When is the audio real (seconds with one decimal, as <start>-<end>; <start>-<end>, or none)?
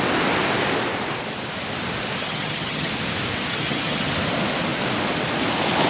0.0-2.2; 2.9-3.5; 4.1-5.9